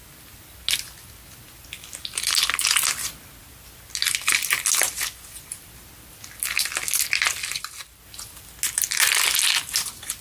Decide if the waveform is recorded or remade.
recorded